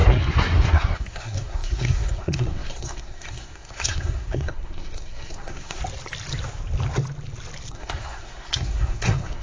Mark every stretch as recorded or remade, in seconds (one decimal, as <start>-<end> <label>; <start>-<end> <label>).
0.0-5.8 remade; 5.8-7.7 recorded; 7.7-9.4 remade